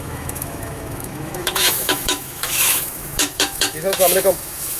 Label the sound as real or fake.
fake